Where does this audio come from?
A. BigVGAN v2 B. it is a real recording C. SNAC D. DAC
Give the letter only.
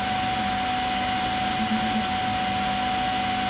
B